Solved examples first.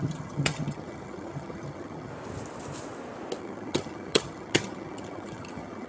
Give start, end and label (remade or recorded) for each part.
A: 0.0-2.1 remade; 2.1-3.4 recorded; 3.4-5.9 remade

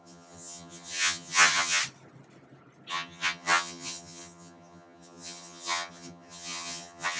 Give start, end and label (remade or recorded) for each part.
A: 0.0-1.8 remade; 1.8-2.9 recorded; 2.9-7.2 remade

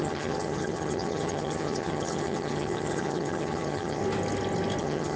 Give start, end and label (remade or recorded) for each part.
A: 0.0-4.0 remade; 4.0-4.8 recorded; 4.8-5.2 remade

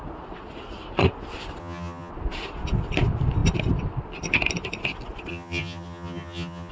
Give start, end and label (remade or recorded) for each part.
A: 0.0-1.6 recorded; 1.6-2.1 remade; 2.1-5.3 recorded; 5.3-6.7 remade

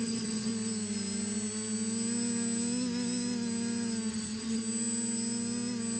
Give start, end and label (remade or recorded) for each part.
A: 0.0-0.5 remade; 0.5-4.1 recorded; 4.1-4.6 remade; 4.6-6.0 recorded